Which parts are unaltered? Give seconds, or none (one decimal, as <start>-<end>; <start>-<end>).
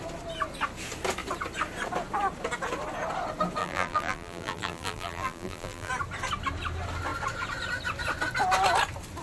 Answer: 0.0-3.6; 5.9-9.2